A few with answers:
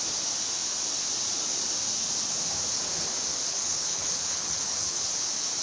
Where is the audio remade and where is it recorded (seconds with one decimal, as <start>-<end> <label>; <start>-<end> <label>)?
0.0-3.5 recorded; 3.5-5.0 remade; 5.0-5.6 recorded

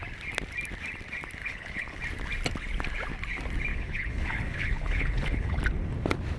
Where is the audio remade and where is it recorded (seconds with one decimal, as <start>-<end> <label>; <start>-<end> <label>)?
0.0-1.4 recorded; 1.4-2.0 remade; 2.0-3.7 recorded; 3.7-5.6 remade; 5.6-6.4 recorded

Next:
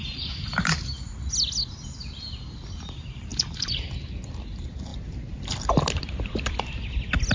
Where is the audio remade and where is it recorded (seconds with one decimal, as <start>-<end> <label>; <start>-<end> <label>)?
0.0-7.3 recorded

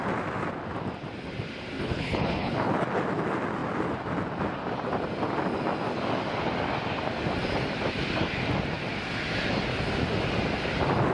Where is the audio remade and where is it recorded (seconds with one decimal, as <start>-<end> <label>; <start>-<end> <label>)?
0.0-1.8 recorded; 1.8-2.7 remade; 2.7-11.1 recorded

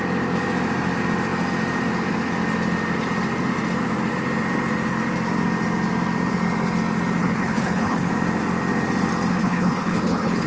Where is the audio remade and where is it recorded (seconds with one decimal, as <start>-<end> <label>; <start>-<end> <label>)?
0.0-7.2 recorded; 7.2-8.1 remade; 8.1-9.4 recorded; 9.4-10.5 remade

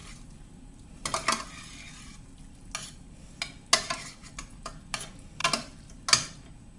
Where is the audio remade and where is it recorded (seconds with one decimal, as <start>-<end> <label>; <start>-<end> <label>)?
0.0-6.8 recorded